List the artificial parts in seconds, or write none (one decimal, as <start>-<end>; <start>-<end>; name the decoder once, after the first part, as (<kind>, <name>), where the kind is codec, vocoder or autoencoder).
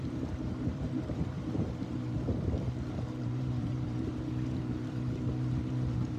0.0-2.3 (vocoder, BigVGAN v2); 3.2-6.2